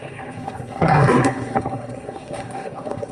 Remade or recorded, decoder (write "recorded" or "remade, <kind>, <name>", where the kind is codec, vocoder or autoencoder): remade, codec, SNAC